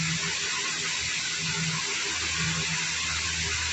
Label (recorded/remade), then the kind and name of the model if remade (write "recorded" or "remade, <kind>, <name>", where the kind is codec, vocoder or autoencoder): recorded